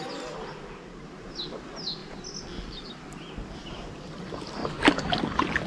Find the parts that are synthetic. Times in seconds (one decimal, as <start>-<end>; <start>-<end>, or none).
none